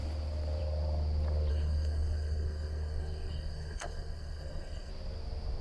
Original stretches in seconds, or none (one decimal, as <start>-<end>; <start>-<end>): 0.0-1.5; 4.9-5.6